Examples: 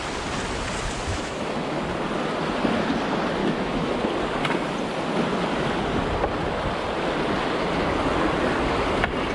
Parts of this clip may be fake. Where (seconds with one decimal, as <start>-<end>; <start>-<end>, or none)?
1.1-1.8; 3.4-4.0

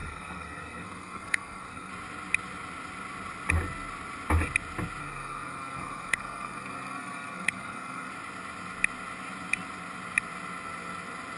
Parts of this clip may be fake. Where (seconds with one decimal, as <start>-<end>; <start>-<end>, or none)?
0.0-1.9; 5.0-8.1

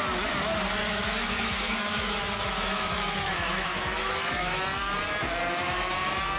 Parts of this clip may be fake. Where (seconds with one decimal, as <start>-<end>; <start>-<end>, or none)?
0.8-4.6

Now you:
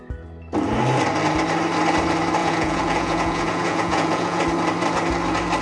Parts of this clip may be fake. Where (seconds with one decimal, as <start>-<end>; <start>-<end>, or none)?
2.4-4.4